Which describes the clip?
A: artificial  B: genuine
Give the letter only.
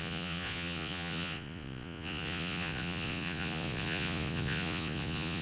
A